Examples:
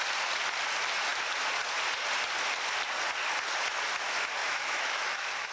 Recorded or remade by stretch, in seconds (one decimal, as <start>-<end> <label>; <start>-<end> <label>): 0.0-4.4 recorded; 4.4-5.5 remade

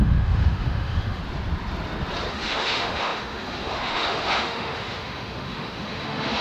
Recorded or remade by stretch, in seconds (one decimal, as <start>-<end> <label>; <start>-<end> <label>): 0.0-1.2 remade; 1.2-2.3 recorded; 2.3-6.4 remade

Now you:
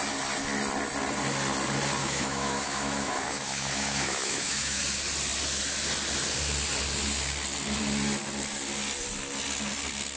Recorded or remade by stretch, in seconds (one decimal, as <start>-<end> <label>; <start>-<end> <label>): 0.0-2.0 recorded; 2.0-4.8 remade; 4.8-10.2 recorded